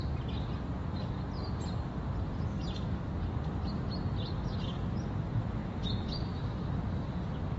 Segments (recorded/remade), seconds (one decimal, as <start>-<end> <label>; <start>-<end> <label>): 0.0-1.4 recorded; 1.4-2.4 remade; 2.4-5.6 recorded; 5.6-6.5 remade; 6.5-7.6 recorded